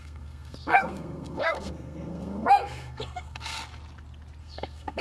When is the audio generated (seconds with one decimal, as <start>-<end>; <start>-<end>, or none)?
0.0-3.6; 4.4-5.0